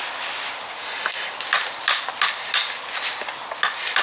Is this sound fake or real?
real